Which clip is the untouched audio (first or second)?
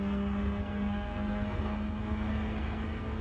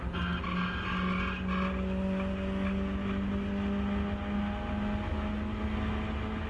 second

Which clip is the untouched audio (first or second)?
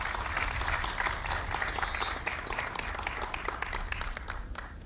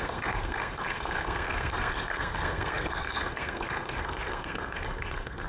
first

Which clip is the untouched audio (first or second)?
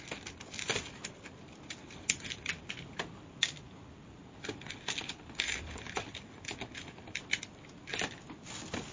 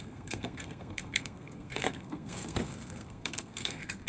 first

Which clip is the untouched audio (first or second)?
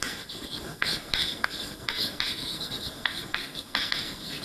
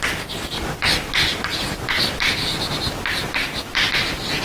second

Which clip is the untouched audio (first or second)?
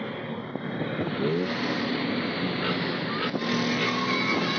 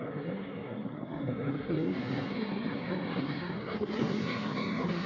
first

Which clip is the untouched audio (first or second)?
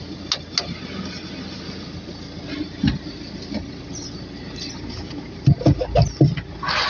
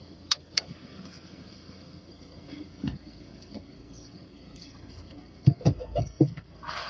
first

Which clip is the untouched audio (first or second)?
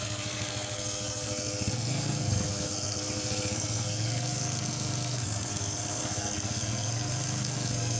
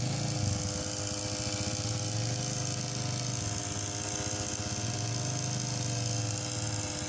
second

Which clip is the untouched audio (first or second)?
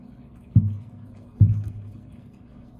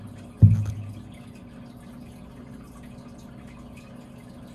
second